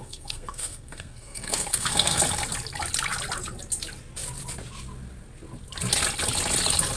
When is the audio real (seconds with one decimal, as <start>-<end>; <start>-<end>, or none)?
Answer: 2.2-7.0